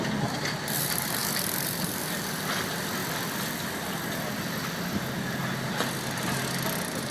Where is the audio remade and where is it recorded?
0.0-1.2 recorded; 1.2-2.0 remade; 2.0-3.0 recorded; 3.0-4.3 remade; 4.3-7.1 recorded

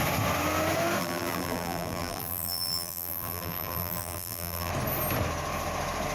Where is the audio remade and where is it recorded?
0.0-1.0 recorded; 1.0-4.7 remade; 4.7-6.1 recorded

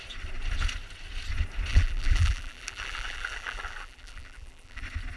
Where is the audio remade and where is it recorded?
0.0-1.7 recorded; 1.7-4.8 remade; 4.8-5.2 recorded

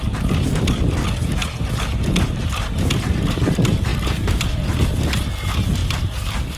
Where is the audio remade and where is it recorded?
0.0-5.8 recorded; 5.8-6.6 remade